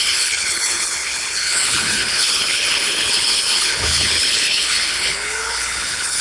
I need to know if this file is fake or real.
fake